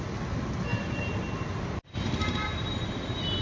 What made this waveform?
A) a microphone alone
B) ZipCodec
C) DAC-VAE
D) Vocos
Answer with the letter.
A